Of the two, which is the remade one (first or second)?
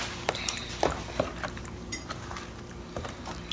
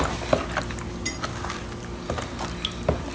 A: first